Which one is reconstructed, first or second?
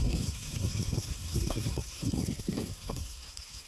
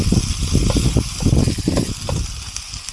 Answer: first